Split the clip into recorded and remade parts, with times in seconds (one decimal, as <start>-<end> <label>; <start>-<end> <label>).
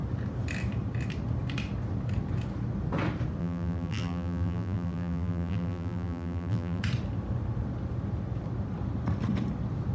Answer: 0.0-3.4 recorded; 3.4-6.8 remade; 6.8-9.9 recorded